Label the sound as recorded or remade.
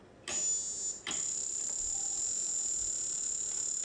recorded